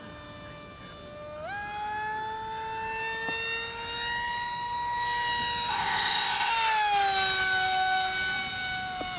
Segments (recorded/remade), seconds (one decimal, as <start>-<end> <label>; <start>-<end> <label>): 0.0-5.7 recorded; 5.7-6.5 remade; 6.5-9.2 recorded